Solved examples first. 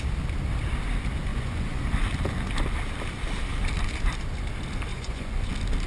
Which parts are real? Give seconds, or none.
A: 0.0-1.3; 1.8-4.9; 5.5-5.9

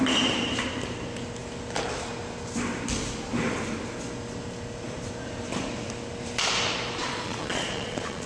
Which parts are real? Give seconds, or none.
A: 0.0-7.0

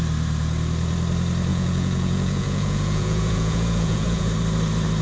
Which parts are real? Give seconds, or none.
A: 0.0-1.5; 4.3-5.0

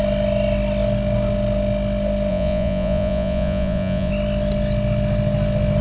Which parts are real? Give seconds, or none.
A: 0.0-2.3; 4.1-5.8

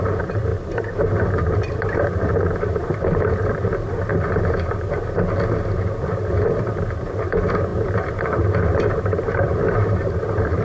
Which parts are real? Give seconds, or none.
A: 4.1-5.8

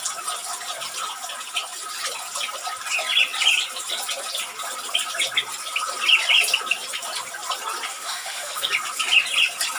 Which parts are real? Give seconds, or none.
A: 0.0-7.9; 8.7-9.8

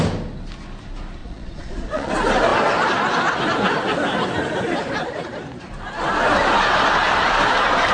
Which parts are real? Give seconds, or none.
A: 0.0-1.2; 2.1-7.9